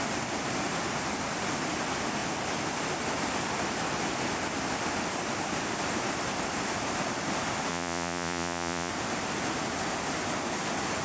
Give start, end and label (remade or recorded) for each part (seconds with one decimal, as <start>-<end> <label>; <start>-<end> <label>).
0.0-7.7 recorded; 7.7-8.9 remade; 8.9-11.0 recorded